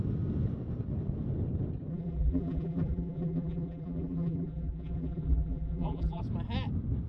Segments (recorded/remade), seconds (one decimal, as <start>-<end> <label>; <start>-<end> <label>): 0.0-1.9 recorded; 1.9-6.2 remade; 6.2-7.1 recorded